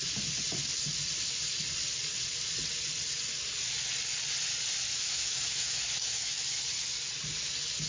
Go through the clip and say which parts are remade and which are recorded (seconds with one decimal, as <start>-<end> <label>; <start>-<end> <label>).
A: 0.0-4.9 recorded; 4.9-6.4 remade; 6.4-7.9 recorded

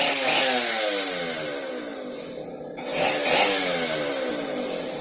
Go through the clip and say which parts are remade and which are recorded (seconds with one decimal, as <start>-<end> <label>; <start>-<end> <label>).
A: 0.0-5.0 recorded

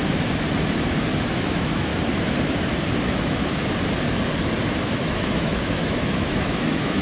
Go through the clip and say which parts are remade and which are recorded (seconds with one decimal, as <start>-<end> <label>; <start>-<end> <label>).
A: 0.0-1.3 recorded; 1.3-1.9 remade; 1.9-3.0 recorded; 3.0-3.5 remade; 3.5-4.9 recorded; 4.9-7.0 remade

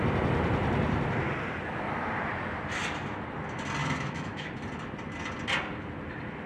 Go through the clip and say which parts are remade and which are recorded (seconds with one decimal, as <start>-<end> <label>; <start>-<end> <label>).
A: 0.0-3.8 recorded; 3.8-4.5 remade; 4.5-6.5 recorded